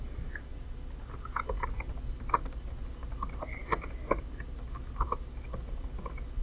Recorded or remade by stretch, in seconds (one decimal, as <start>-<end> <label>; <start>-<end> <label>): 0.0-6.4 recorded